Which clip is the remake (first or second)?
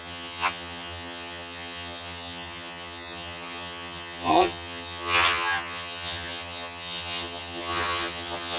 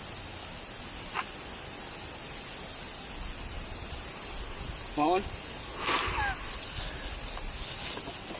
first